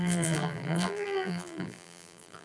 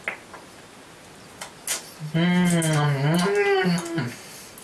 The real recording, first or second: second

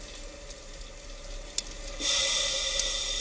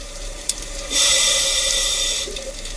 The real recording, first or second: first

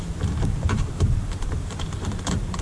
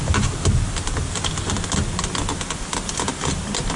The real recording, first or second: second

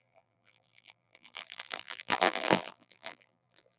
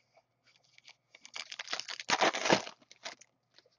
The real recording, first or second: second